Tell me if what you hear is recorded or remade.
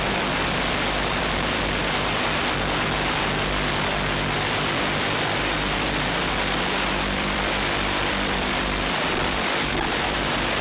remade